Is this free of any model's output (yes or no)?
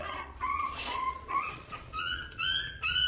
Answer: no